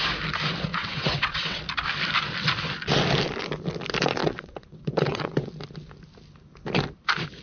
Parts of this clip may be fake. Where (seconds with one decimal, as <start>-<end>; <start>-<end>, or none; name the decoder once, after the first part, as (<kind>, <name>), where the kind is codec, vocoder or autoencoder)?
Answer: 0.7-1.6 (vocoder, WaveNeXt); 4.2-5.5